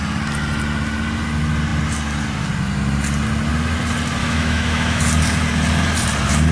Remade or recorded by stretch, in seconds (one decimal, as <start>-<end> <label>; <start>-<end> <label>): 0.0-4.2 recorded; 4.2-5.0 remade; 5.0-6.5 recorded